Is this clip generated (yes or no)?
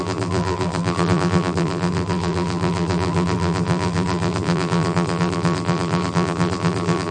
yes